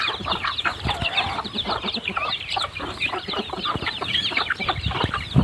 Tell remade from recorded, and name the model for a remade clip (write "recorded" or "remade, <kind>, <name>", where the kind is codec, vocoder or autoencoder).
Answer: remade, vocoder, BigVGAN v2